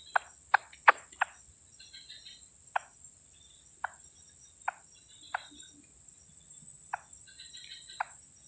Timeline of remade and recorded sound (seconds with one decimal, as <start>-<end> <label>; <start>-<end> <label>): 0.0-8.5 recorded